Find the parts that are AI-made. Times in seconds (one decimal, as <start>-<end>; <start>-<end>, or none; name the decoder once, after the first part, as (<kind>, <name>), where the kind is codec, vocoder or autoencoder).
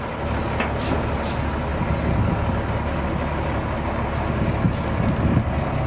none